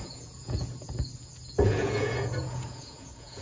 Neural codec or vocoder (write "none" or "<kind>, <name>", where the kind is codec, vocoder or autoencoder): vocoder, Vocos